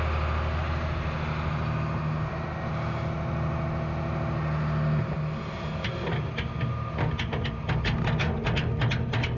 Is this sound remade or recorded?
recorded